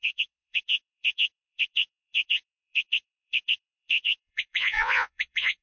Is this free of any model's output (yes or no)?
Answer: no